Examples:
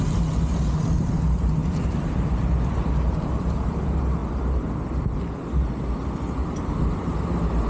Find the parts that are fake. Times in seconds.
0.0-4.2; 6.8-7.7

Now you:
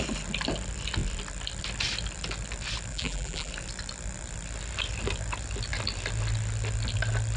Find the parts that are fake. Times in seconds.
2.9-3.5

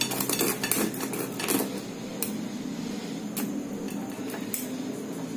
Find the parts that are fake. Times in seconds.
none